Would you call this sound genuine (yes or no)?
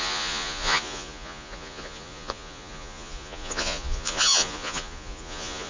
no